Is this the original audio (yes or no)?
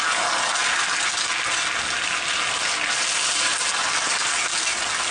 yes